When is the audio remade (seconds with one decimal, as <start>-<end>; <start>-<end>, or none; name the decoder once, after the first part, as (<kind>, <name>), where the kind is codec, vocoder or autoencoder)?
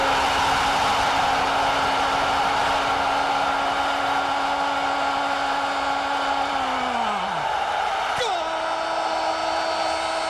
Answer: none